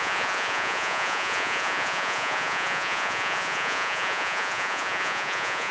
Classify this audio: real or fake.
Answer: fake